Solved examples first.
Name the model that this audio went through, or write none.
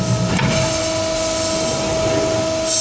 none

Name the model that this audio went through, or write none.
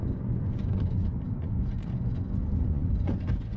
vocoder, Vocos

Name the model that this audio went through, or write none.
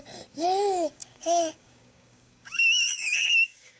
codec, DAC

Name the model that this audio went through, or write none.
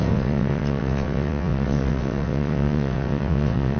vocoder, WaveNeXt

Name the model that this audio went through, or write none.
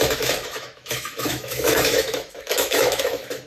autoencoder, DAC-VAE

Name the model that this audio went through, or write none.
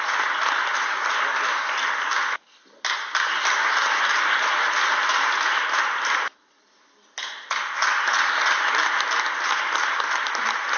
none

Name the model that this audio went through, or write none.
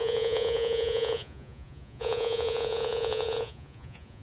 vocoder, Vocos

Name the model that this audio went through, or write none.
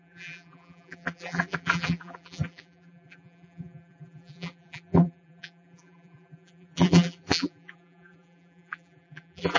vocoder, BigVGAN v2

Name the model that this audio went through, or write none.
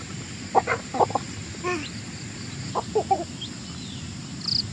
none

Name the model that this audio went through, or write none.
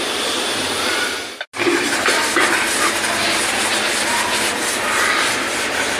none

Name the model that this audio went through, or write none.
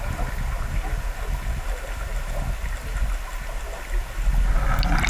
none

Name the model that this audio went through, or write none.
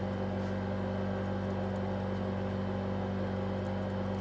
none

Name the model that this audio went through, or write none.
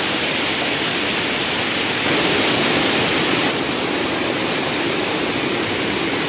none